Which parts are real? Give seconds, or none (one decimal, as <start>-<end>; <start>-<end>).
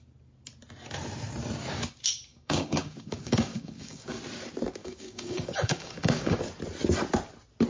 0.0-2.3; 4.2-4.8; 6.4-7.7